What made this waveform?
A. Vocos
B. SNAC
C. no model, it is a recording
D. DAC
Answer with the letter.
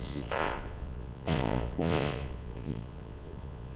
A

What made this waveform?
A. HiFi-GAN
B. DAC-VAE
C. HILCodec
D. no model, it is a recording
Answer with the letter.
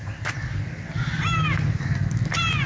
D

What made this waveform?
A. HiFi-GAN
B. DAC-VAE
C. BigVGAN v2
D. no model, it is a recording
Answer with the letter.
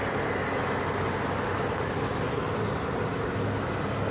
D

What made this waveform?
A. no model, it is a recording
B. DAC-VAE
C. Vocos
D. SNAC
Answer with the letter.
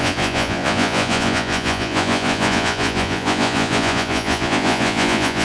C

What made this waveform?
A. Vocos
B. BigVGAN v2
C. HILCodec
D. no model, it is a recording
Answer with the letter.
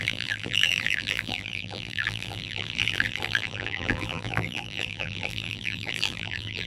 B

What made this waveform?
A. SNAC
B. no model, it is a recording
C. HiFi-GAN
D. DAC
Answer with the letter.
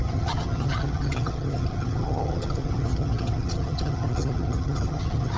C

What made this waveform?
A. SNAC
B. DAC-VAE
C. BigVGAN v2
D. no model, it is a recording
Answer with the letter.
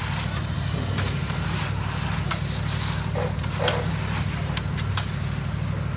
D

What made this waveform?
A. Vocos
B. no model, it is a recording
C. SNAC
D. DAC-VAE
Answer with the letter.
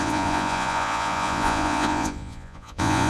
A